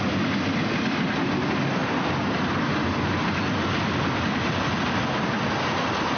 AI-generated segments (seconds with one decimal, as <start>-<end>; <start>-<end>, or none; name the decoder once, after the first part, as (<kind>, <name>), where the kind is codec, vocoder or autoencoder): none